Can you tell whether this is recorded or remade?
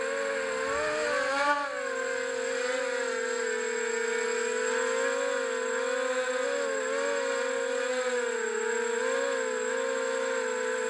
recorded